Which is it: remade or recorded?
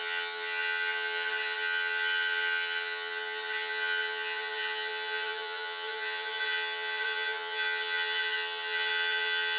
remade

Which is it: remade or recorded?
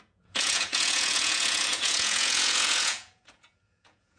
remade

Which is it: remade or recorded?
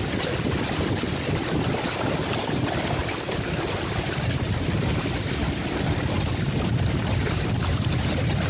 recorded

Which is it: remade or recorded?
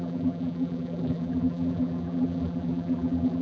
remade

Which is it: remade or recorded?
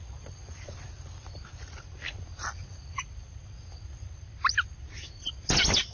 recorded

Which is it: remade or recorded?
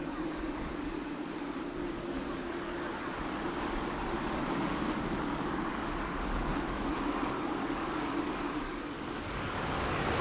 remade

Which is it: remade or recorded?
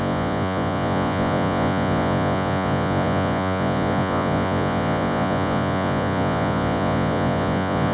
remade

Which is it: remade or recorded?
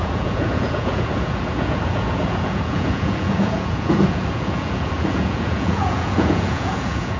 remade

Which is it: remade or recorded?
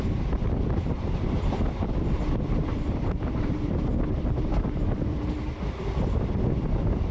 remade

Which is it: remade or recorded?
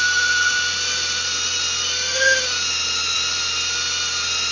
recorded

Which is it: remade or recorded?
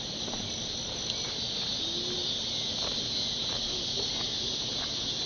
recorded